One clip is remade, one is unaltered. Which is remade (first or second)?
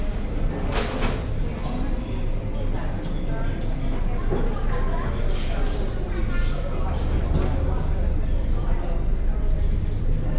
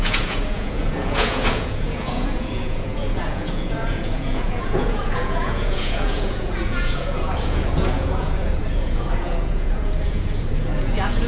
second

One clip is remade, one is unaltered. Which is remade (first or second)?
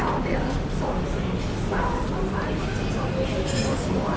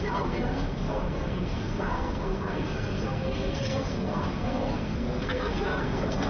second